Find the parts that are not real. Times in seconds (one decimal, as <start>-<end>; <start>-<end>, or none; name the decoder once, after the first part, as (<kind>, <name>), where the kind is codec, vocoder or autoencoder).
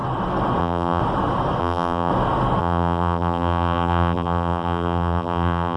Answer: 0.6-1.0 (vocoder, BigVGAN v2); 1.6-2.1; 2.6-5.8